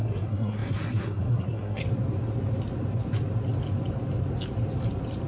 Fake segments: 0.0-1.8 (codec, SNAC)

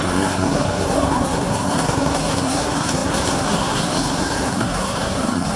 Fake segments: 0.0-5.6 (codec, SNAC)

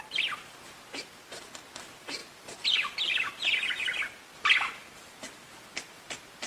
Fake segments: none